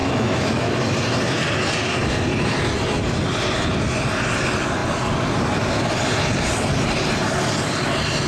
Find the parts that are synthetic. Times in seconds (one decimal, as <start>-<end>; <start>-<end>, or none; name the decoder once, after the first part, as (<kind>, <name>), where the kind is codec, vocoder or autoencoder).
0.0-0.7 (autoencoder, DAC-VAE)